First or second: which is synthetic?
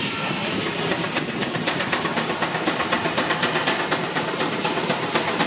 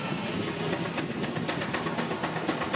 first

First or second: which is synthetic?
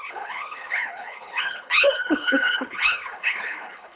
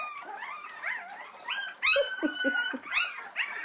first